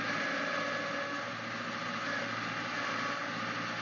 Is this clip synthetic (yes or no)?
no